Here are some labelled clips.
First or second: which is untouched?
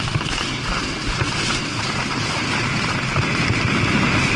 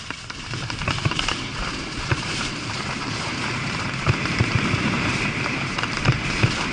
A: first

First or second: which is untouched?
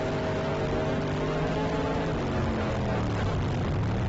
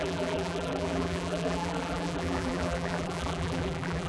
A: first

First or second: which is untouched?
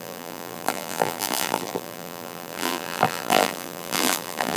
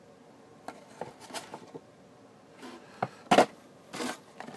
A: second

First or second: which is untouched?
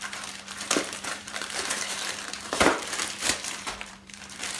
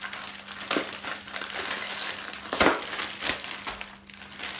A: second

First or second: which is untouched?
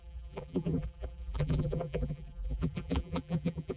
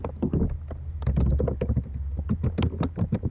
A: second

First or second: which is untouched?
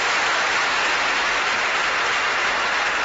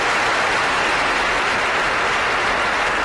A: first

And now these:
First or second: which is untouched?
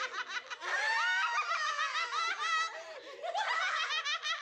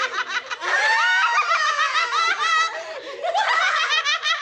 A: first